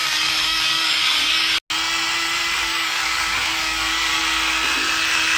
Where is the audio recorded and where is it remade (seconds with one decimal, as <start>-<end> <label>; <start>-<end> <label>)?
0.0-1.6 remade; 1.6-2.6 recorded; 2.6-4.2 remade; 4.2-5.4 recorded